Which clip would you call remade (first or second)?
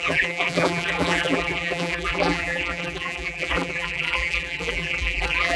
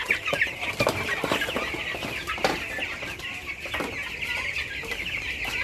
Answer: first